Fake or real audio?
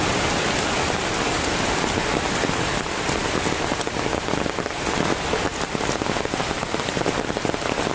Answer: real